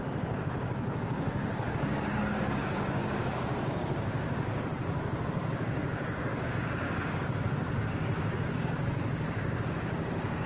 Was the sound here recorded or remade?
remade